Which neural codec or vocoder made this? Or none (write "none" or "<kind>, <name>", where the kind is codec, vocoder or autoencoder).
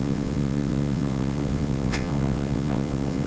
vocoder, WaveNeXt